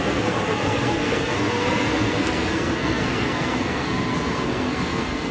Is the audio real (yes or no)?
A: no